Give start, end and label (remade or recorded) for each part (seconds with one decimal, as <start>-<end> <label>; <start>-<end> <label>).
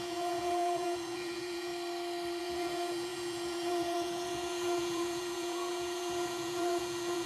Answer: 0.0-1.7 remade; 1.7-2.4 recorded; 2.4-7.3 remade